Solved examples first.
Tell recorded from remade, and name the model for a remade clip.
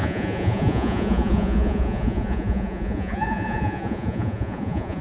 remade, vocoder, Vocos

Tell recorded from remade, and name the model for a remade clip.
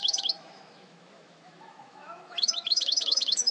remade, autoencoder, DAC-VAE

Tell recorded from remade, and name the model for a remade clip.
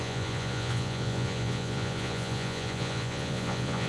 remade, vocoder, Vocos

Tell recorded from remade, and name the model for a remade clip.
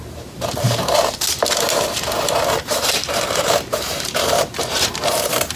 remade, vocoder, BigVGAN v2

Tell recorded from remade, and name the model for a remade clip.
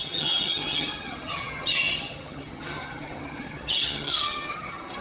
remade, vocoder, HiFi-GAN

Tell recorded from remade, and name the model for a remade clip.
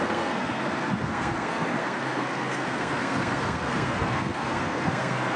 remade, codec, SNAC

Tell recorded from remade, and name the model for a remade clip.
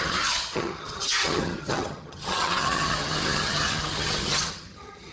remade, vocoder, HiFi-GAN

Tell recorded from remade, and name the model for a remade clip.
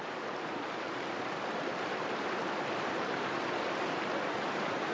recorded